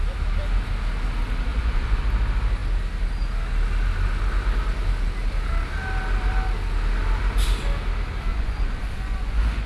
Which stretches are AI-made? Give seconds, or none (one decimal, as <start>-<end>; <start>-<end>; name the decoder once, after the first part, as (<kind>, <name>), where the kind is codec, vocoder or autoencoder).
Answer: 1.5-2.0 (vocoder, Vocos); 8.3-9.7